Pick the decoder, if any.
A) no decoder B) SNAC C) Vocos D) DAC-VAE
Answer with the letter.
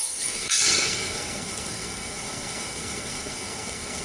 B